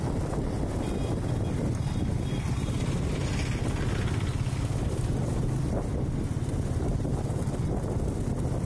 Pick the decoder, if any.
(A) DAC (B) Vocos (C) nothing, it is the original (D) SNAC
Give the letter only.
C